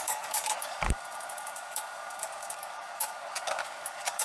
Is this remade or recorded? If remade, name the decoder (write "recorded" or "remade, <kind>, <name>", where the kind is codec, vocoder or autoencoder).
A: remade, codec, DAC